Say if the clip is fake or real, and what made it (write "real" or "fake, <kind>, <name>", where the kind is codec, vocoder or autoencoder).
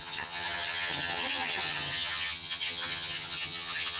fake, vocoder, HiFi-GAN